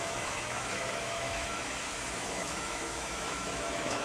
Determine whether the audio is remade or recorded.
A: remade